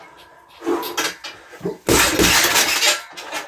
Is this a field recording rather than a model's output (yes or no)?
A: yes